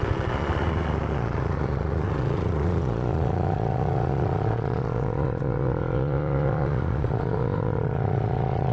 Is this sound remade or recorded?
remade